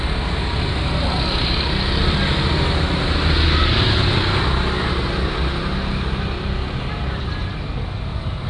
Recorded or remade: recorded